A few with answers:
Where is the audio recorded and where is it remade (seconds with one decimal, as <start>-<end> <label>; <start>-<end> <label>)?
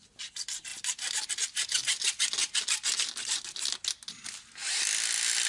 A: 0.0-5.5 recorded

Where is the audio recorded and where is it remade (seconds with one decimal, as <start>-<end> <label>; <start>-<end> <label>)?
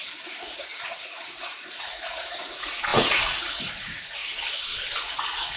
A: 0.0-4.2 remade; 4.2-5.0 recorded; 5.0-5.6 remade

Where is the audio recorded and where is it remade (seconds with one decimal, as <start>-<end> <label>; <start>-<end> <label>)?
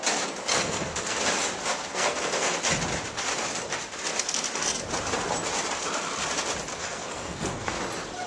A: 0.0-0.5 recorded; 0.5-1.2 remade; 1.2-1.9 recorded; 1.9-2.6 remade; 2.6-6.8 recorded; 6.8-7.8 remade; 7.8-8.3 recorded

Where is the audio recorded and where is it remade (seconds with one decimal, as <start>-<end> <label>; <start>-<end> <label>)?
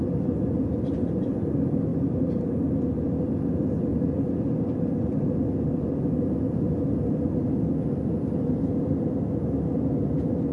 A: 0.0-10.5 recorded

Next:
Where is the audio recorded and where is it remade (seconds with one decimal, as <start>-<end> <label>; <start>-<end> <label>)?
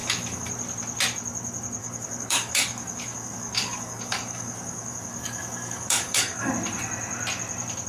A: 0.0-0.5 remade; 0.5-1.8 recorded; 1.8-6.5 remade; 6.5-7.9 recorded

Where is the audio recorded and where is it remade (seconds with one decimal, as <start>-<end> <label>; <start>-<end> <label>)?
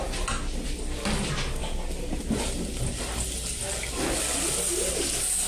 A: 0.0-5.5 recorded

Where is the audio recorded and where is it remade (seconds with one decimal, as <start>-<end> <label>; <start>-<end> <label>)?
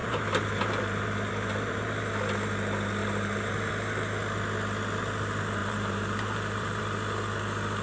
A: 0.0-2.0 remade; 2.0-3.0 recorded; 3.0-3.7 remade; 3.7-5.6 recorded; 5.6-6.8 remade; 6.8-7.8 recorded